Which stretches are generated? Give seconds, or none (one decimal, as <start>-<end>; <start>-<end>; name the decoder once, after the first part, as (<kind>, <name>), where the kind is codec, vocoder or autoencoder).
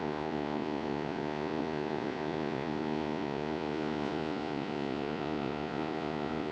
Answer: 0.0-6.5 (vocoder, Vocos)